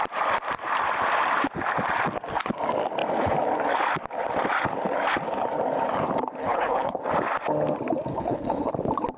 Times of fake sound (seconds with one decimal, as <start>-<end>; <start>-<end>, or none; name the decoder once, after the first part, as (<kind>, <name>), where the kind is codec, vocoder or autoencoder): 6.4-7.0 (codec, HILCodec); 8.1-8.7

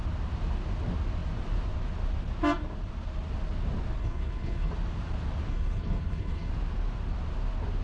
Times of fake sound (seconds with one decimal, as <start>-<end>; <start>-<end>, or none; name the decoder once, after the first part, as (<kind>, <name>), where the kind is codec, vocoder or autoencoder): 4.0-4.7 (codec, HILCodec); 5.5-6.5